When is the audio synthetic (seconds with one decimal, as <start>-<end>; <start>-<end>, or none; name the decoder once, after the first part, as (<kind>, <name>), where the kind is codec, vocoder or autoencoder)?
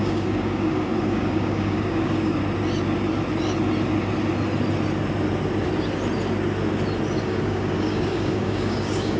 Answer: 0.0-2.4 (codec, DAC); 7.2-9.2